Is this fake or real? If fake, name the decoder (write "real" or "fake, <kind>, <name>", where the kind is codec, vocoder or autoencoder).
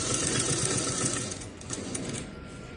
fake, vocoder, Vocos